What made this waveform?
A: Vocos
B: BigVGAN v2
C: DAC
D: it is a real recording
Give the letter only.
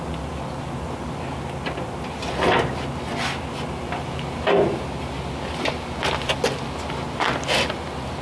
D